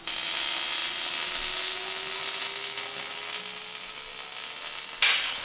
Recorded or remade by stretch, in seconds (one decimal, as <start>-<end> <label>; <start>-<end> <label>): 0.0-5.4 recorded

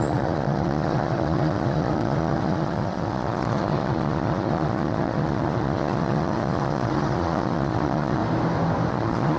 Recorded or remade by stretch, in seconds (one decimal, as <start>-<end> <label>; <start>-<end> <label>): 0.0-8.2 remade; 8.2-8.9 recorded; 8.9-9.4 remade

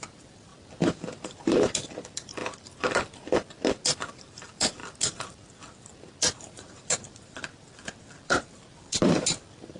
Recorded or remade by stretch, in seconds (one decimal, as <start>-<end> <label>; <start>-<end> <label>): 0.0-0.5 remade; 0.5-1.3 recorded; 1.3-2.4 remade; 2.4-4.1 recorded; 4.1-4.8 remade; 4.8-6.3 recorded; 6.3-9.8 remade

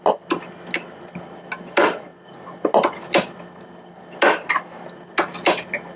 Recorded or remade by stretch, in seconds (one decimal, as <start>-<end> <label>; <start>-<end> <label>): 0.0-6.0 recorded

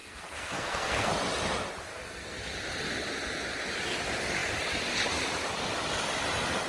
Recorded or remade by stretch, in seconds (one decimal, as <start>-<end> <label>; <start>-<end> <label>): 0.0-1.1 remade; 1.1-1.9 recorded; 1.9-2.5 remade; 2.5-6.7 recorded

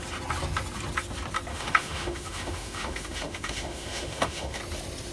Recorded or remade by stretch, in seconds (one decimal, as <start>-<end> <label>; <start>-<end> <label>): 0.0-1.5 recorded; 1.5-4.6 remade; 4.6-5.1 recorded

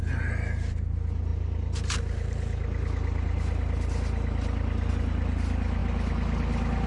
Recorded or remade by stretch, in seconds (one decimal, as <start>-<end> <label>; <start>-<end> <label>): 0.0-6.9 recorded